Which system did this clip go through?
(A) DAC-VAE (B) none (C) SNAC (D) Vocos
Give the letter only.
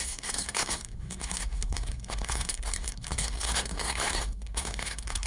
C